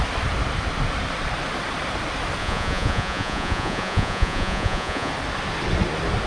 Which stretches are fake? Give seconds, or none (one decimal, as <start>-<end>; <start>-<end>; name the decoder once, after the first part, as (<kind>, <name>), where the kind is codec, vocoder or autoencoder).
2.4-5.1 (vocoder, Vocos)

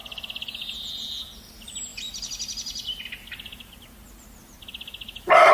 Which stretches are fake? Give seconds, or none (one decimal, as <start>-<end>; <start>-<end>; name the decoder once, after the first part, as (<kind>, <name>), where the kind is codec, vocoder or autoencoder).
none

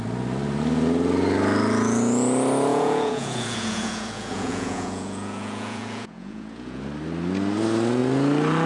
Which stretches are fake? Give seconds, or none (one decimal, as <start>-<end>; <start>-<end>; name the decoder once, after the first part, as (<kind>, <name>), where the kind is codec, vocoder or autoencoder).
2.7-6.8 (vocoder, Vocos)

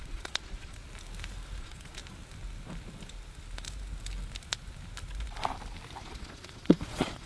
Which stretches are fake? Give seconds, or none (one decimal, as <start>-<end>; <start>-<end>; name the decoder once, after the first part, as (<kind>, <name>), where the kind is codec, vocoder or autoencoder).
0.0-0.8 (vocoder, Vocos); 1.6-2.0; 6.0-7.3

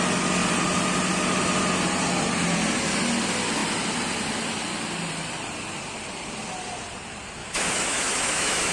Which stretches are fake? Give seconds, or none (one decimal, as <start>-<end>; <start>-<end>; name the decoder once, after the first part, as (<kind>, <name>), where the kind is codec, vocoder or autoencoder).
7.4-8.7 (autoencoder, DAC-VAE)

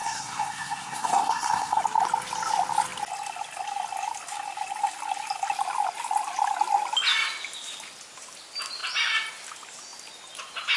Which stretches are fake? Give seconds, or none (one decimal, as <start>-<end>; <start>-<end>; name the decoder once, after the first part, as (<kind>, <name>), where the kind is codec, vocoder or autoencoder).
0.0-1.8 (codec, SNAC)

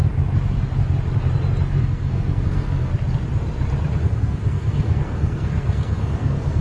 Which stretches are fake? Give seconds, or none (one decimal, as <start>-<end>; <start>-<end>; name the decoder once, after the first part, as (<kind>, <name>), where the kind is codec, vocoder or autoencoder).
1.8-2.9 (codec, SNAC); 4.1-6.6

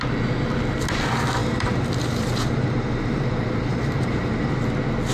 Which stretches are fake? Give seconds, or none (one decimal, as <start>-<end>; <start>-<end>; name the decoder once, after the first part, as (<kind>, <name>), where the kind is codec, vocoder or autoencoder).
1.4-4.5 (vocoder, BigVGAN v2)